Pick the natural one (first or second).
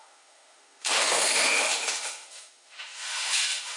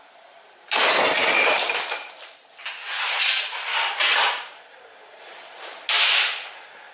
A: second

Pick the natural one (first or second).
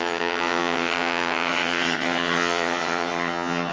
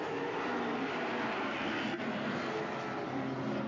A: second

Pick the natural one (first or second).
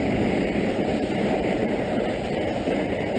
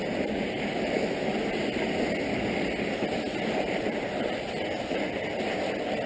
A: second